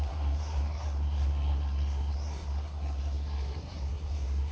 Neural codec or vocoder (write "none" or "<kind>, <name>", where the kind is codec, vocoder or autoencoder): codec, SNAC